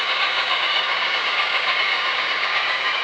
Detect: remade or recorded remade